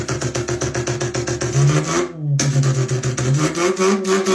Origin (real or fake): real